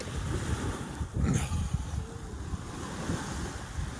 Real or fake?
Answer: fake